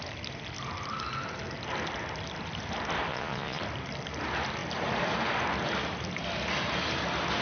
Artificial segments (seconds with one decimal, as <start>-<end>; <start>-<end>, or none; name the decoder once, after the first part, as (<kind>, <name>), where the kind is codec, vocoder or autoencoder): 3.1-3.6 (vocoder, Vocos)